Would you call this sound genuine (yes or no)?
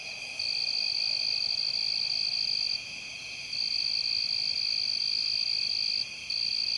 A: yes